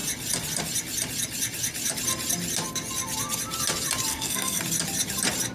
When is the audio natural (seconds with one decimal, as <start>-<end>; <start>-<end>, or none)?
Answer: 0.0-4.1; 4.6-5.5